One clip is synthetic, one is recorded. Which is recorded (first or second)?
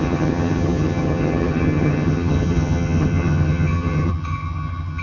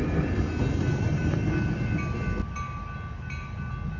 second